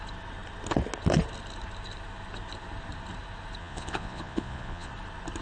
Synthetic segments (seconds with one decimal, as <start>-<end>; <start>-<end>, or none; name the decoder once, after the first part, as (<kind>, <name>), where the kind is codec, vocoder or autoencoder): 3.6-4.9 (vocoder, Vocos)